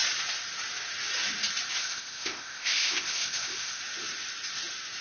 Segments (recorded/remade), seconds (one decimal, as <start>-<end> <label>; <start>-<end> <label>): 0.0-1.8 recorded; 1.8-3.8 remade; 3.8-5.0 recorded